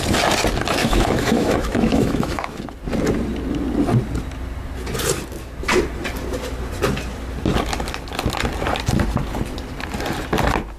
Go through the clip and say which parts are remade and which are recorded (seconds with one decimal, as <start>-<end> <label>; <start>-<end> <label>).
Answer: 0.0-0.8 recorded; 0.8-2.6 remade; 2.6-10.8 recorded